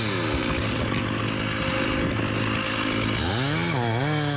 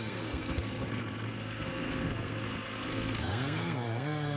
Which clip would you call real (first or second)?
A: first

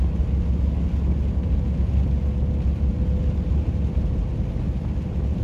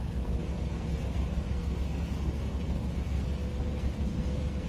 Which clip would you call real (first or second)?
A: first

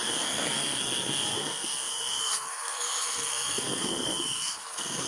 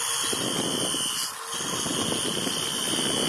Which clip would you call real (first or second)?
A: second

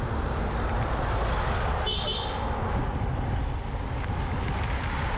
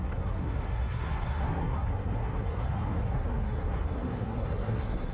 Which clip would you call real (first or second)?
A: first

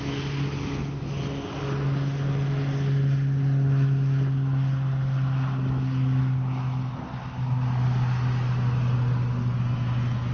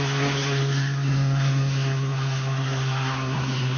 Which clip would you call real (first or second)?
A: first